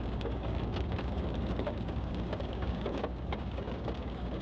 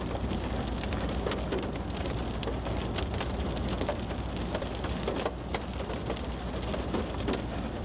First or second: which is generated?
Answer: first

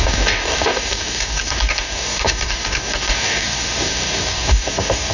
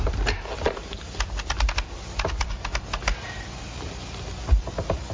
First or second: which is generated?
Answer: first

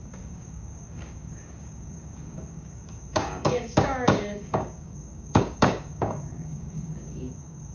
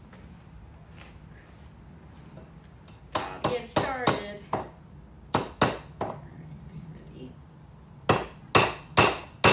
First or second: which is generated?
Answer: first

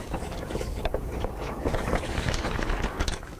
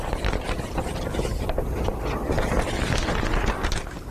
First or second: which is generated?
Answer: first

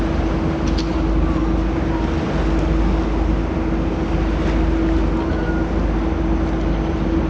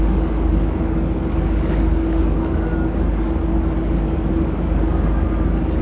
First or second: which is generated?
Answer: second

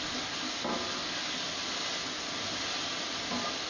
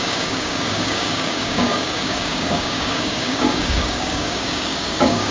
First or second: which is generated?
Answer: second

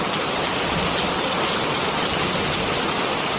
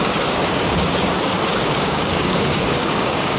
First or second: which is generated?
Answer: second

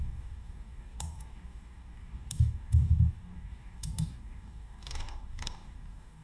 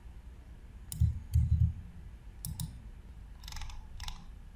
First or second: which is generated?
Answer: first